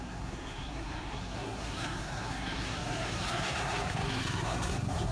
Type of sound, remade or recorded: remade